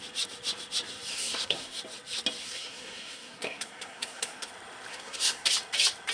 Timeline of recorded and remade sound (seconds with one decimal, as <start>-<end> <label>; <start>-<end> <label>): 0.0-1.1 recorded; 1.1-1.8 remade; 1.8-2.4 recorded; 2.4-4.5 remade; 4.5-4.9 recorded; 4.9-5.5 remade; 5.5-6.1 recorded